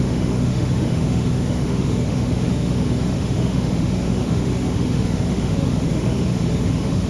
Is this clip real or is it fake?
fake